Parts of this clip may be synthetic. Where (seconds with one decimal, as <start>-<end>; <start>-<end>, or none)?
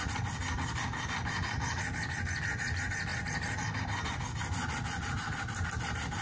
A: none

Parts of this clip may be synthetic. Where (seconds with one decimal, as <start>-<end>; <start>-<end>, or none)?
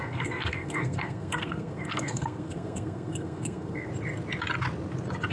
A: 0.0-3.9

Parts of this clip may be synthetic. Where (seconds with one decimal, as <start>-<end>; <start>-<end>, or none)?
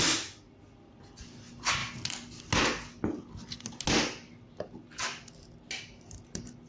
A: none